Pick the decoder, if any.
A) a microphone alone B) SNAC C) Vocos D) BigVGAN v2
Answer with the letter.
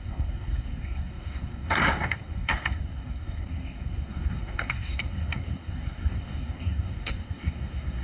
B